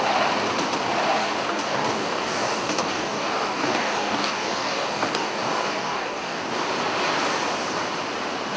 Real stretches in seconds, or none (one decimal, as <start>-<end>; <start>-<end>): 0.0-1.2; 6.4-8.6